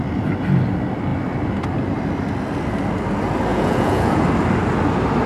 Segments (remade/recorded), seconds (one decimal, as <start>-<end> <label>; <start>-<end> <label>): 0.0-3.5 recorded; 3.5-4.2 remade; 4.2-5.3 recorded